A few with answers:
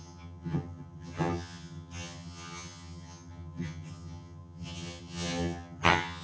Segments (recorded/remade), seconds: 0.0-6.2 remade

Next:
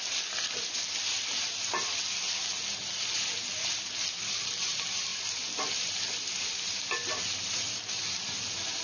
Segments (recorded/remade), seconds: 0.0-8.8 recorded

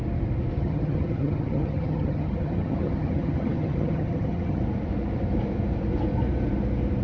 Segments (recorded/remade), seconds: 0.0-0.6 recorded; 0.6-4.6 remade; 4.6-7.0 recorded

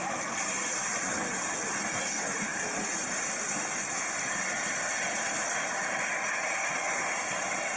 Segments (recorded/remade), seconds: 0.0-7.8 recorded

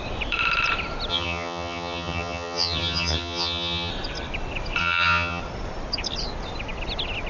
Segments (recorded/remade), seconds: 0.0-1.1 recorded; 1.1-3.9 remade; 3.9-4.8 recorded; 4.8-5.4 remade; 5.4-7.3 recorded

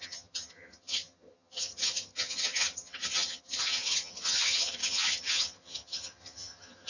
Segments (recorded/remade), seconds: 0.0-6.9 remade

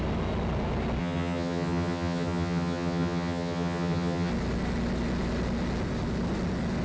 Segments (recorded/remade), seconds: 0.0-1.0 recorded; 1.0-4.3 remade; 4.3-6.8 recorded